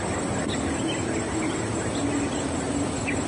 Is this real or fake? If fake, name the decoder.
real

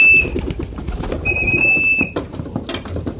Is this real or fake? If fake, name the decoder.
real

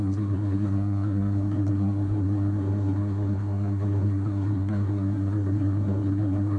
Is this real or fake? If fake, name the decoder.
fake, codec, SNAC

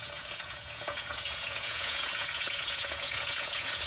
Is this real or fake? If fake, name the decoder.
fake, vocoder, Vocos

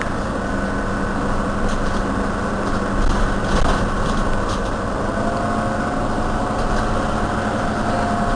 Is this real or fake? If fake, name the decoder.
real